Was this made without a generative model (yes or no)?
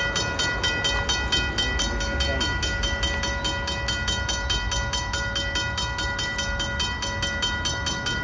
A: yes